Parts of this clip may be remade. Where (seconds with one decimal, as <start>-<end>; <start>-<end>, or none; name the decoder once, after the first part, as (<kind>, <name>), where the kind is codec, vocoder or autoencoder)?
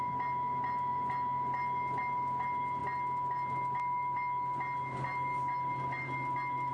none